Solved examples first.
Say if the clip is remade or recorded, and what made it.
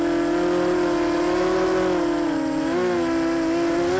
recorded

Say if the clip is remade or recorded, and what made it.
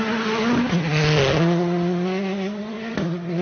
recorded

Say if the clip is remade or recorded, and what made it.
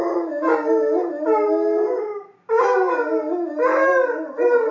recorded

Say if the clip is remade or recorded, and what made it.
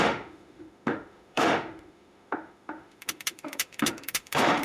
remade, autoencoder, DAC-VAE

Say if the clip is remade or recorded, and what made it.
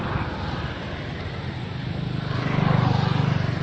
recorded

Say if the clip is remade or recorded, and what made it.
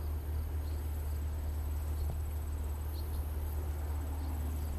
recorded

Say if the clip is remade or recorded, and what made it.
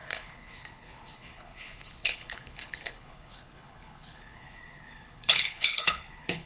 remade, codec, HILCodec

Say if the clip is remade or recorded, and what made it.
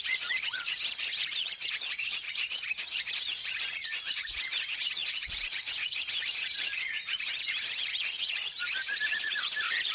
remade, vocoder, Vocos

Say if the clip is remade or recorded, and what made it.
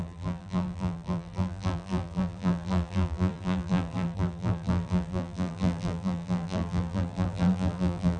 remade, vocoder, BigVGAN v2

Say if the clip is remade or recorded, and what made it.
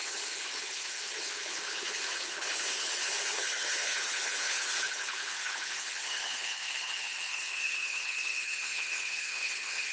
remade, codec, HILCodec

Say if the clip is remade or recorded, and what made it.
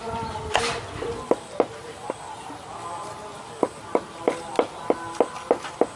recorded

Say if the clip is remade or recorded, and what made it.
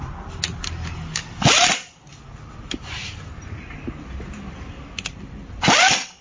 recorded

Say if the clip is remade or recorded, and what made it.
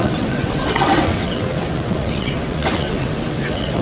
remade, vocoder, WaveNeXt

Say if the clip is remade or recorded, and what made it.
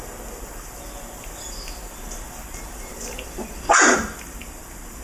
remade, vocoder, BigVGAN v2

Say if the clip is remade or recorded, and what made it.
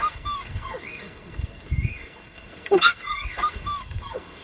remade, codec, SNAC